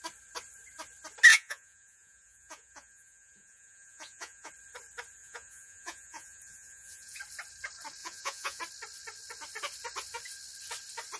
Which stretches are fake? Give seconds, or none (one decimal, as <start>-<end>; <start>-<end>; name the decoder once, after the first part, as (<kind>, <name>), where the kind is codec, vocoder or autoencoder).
1.3-4.5 (vocoder, Vocos); 5.2-7.2; 8.0-8.6